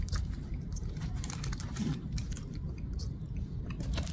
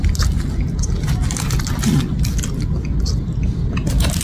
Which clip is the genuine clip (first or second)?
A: second